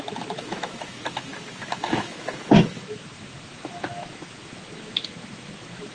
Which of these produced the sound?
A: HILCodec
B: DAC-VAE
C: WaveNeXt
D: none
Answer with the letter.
B